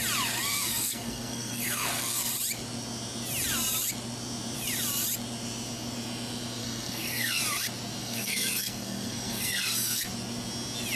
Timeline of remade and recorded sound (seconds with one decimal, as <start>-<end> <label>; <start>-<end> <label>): 0.0-0.5 recorded; 0.5-2.3 remade; 2.3-6.6 recorded; 6.6-7.4 remade; 7.4-8.0 recorded; 8.0-10.1 remade; 10.1-11.0 recorded